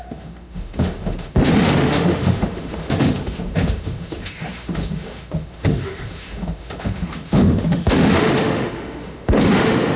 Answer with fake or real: fake